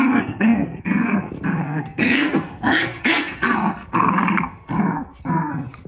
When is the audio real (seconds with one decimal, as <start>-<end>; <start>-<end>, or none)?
none